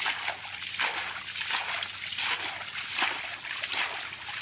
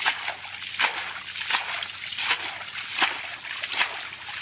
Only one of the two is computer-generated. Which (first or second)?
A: first